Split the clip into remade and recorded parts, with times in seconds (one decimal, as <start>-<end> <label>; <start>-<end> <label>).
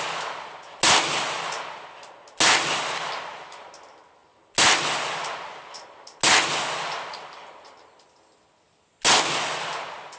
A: 0.0-10.2 recorded